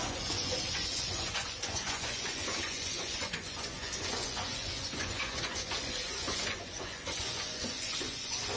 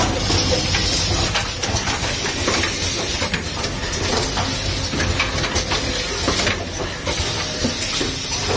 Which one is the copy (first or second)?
first